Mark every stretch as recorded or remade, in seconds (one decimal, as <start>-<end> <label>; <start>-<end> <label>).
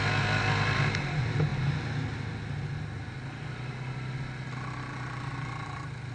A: 0.0-6.1 recorded